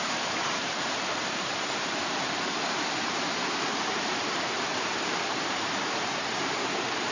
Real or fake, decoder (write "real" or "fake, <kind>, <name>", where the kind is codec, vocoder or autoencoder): fake, vocoder, BigVGAN v2